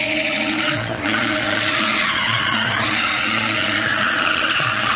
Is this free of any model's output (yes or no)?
no